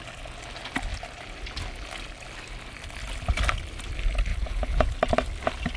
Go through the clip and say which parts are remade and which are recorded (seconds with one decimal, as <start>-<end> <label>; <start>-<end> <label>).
0.0-4.3 recorded; 4.3-4.9 remade; 4.9-5.8 recorded